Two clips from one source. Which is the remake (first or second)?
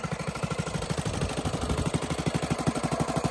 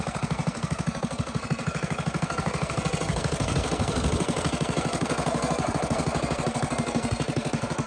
second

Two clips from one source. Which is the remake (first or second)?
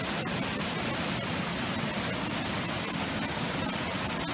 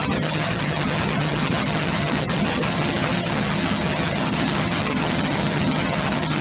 second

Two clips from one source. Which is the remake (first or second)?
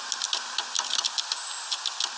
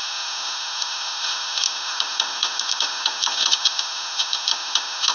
second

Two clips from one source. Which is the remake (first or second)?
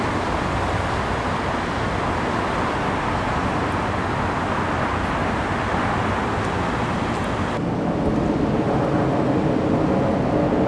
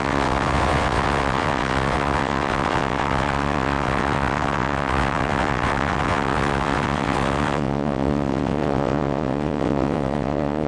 second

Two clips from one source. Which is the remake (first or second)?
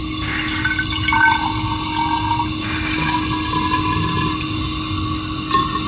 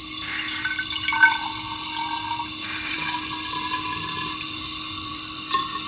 second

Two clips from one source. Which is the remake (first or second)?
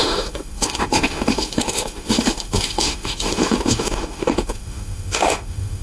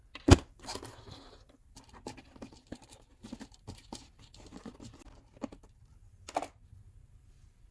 first